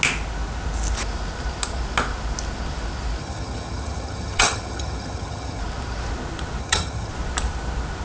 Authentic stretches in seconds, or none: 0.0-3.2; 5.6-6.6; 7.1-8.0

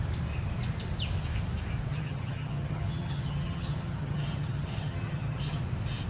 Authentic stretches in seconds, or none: 0.0-1.9; 5.6-6.1

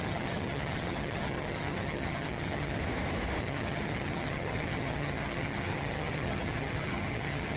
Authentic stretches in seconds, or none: 2.8-3.4